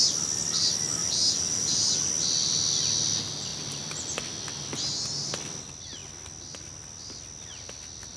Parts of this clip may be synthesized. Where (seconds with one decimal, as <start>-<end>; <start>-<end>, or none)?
1.0-2.1